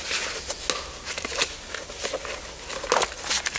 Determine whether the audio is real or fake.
real